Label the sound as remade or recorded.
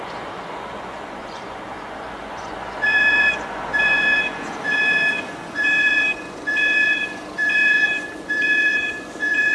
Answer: remade